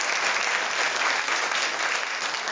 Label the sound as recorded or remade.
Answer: recorded